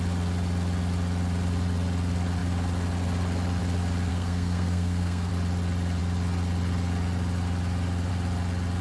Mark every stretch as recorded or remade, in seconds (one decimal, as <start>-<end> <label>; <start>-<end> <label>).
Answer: 0.0-4.1 recorded; 4.1-5.3 remade; 5.3-8.8 recorded